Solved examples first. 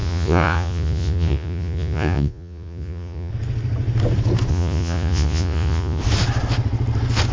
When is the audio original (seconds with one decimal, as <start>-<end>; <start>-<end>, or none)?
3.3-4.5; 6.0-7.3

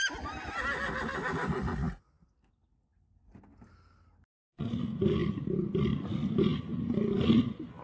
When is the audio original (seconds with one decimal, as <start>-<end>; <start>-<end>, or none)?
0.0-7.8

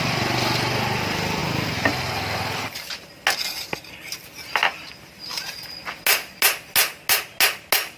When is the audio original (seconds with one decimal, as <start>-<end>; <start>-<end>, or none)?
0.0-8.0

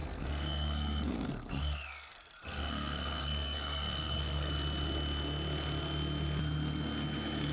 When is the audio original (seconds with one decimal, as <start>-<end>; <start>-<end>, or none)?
4.5-7.5

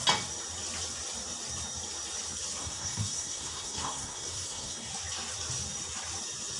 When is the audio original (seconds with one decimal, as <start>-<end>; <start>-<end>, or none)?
0.0-2.6; 4.9-6.6